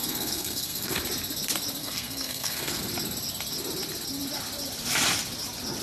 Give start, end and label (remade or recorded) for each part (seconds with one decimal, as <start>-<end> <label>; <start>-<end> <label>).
0.0-1.0 remade; 1.0-1.8 recorded; 1.8-2.8 remade; 2.8-5.8 recorded